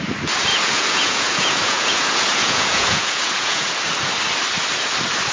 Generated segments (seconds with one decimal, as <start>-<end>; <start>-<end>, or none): 0.5-3.7